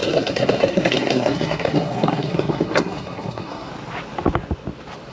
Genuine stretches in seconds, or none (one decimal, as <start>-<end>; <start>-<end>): 3.7-5.1